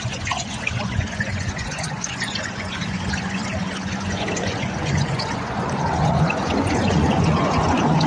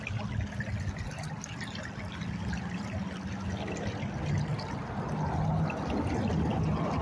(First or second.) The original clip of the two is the second